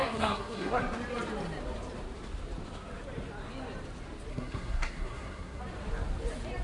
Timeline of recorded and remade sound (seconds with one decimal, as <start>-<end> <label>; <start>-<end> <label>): 0.0-0.8 remade; 0.8-4.3 recorded; 4.3-5.6 remade; 5.6-6.6 recorded